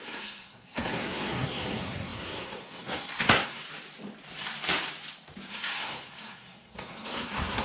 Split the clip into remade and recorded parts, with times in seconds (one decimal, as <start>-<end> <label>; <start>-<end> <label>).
0.0-3.6 remade; 3.6-5.5 recorded; 5.5-7.6 remade